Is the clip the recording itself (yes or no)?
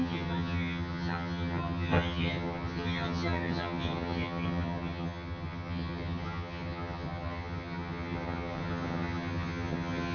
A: no